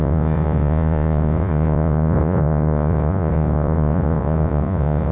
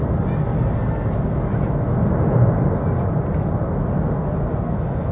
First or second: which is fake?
first